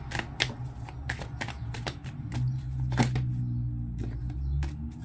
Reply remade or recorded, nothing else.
recorded